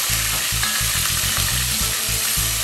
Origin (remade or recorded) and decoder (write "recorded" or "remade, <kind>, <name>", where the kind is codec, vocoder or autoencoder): recorded